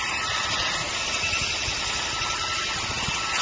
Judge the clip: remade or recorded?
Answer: recorded